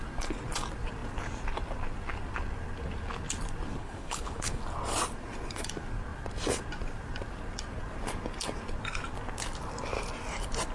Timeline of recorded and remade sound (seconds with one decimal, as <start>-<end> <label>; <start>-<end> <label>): 0.0-3.8 recorded; 3.8-4.6 remade; 4.6-10.7 recorded